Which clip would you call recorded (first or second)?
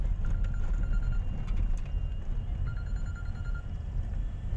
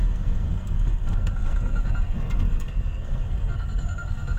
first